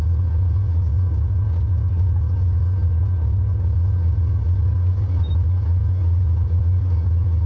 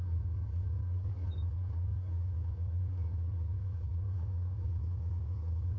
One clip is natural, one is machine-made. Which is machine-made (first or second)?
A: second